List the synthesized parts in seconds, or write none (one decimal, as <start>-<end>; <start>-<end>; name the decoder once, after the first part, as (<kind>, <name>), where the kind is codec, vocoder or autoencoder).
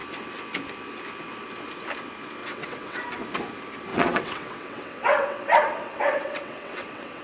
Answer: 2.4-3.0 (vocoder, WaveNeXt); 3.9-7.2